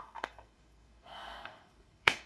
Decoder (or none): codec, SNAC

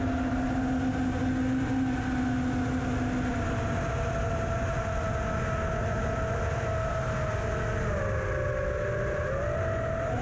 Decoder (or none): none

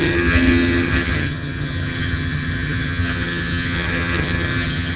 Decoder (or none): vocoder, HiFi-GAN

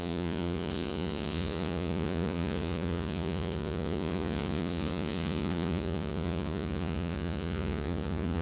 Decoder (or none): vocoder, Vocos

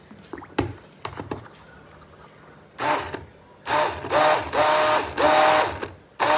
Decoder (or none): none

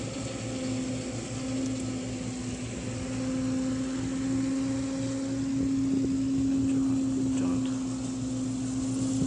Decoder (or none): none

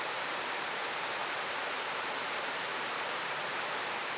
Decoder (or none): vocoder, BigVGAN v2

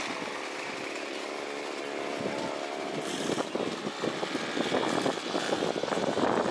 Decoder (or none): none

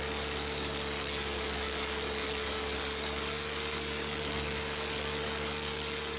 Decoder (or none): codec, DAC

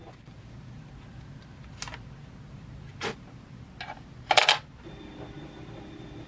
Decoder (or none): none